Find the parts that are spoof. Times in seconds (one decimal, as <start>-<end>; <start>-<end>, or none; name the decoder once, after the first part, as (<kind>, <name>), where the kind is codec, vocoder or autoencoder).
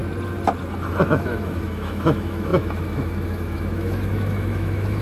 1.0-5.0 (autoencoder, DAC-VAE)